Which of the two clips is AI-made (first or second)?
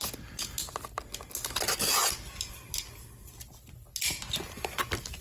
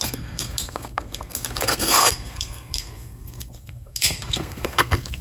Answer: second